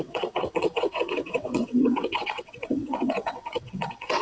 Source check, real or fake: fake